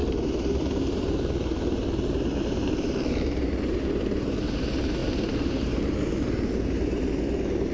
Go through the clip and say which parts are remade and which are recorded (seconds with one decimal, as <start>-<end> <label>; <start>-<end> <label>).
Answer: 0.0-7.7 remade